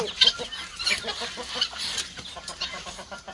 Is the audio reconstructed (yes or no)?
no